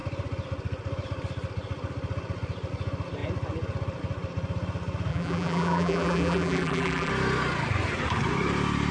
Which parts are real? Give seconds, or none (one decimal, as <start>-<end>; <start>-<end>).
0.0-5.1; 7.1-8.9